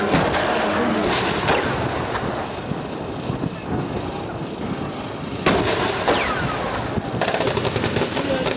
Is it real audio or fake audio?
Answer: real